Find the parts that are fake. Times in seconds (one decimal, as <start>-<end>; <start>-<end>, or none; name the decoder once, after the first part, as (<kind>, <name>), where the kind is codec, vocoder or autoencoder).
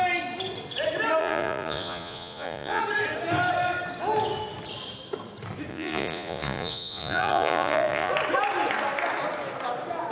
1.2-2.8 (vocoder, Vocos); 5.7-8.1